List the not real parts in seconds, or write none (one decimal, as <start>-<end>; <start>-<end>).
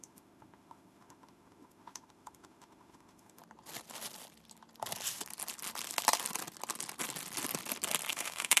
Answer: 0.0-3.4; 8.1-8.6